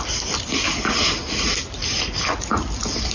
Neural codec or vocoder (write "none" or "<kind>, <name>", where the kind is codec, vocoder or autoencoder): none